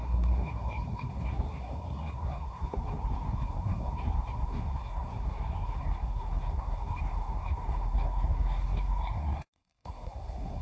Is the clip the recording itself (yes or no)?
no